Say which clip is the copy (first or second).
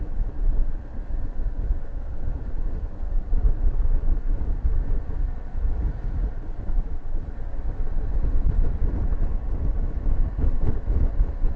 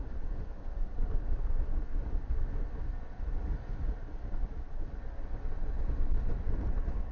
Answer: first